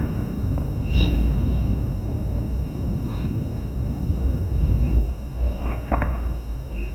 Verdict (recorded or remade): remade